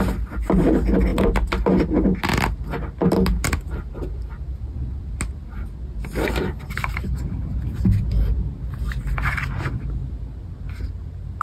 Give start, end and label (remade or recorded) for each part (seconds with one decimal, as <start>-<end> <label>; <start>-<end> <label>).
0.0-11.4 recorded